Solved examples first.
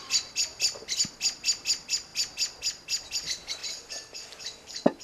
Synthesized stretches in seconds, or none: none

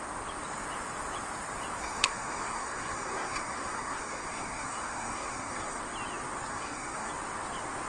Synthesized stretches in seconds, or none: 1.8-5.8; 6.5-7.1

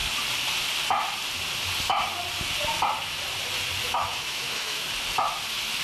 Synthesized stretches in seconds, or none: 3.8-4.9

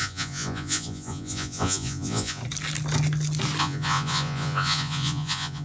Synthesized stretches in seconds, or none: 0.0-2.4; 3.6-5.6

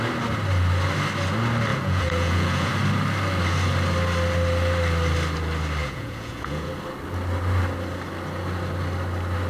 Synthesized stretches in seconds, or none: 1.7-2.7; 5.8-6.7